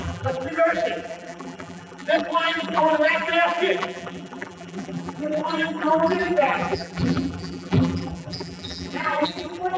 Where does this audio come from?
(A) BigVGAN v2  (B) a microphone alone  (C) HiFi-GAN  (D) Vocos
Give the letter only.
A